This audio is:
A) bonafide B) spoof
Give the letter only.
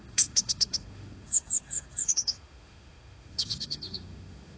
B